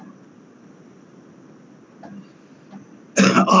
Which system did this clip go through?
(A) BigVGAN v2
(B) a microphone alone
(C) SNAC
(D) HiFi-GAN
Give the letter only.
B